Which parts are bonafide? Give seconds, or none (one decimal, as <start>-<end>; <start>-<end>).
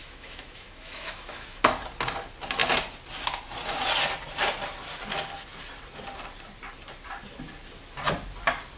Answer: 1.6-8.8